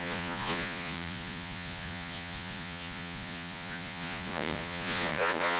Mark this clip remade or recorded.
remade